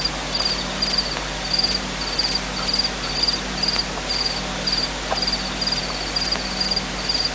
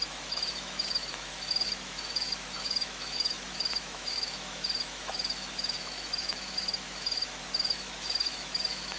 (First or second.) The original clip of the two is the first